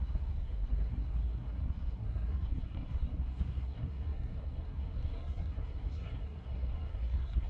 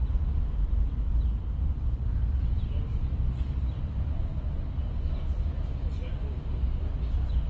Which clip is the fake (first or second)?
first